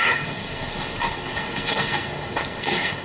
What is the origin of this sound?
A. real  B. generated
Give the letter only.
B